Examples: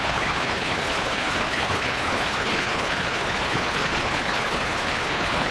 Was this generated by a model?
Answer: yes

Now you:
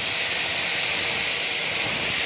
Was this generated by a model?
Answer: no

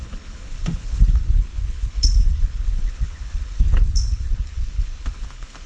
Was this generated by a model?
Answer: yes